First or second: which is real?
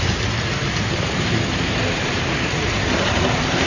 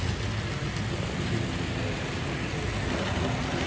second